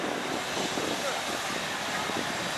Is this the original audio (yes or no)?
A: yes